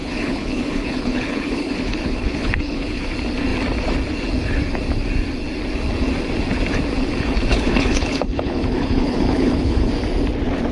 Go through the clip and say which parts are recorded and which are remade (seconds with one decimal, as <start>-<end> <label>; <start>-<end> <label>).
0.0-3.0 remade; 3.0-7.5 recorded; 7.5-9.9 remade; 9.9-10.7 recorded